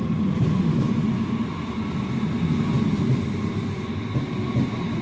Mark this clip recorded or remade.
recorded